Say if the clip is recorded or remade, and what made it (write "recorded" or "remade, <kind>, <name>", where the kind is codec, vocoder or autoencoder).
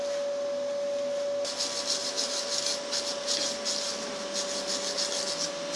recorded